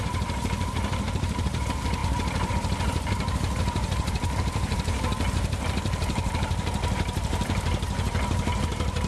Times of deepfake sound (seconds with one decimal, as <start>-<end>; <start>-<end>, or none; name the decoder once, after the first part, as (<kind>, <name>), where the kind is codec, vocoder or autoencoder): 0.0-9.1 (vocoder, BigVGAN v2)